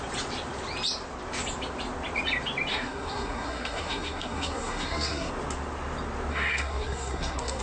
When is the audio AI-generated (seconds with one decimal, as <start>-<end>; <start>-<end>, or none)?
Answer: 2.7-5.3; 6.3-7.6